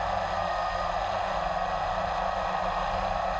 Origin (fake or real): real